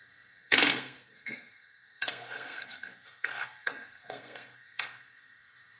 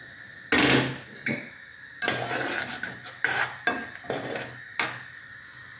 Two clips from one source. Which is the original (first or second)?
second